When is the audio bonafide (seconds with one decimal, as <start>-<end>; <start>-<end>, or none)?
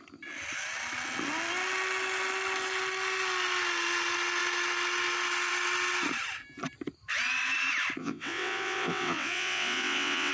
0.0-8.0